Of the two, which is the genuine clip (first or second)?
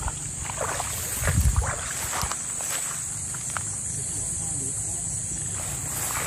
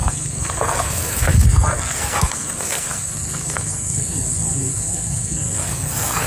first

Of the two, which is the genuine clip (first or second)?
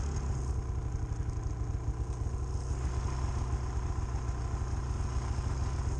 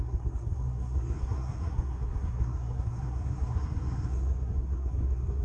first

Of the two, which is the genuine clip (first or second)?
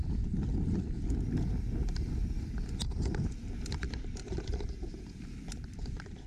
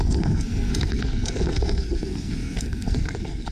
first